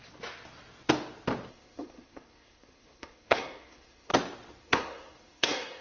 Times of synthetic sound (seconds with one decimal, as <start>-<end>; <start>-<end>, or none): 1.5-4.1; 4.6-5.8